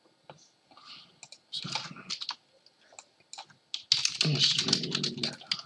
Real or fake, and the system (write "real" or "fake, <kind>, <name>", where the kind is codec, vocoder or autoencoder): real